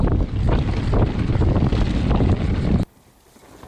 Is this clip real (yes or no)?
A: yes